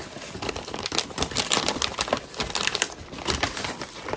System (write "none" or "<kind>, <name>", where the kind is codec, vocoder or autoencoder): none